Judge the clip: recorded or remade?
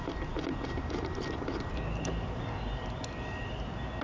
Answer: remade